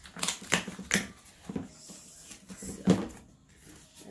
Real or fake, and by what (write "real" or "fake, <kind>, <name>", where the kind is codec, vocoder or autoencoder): real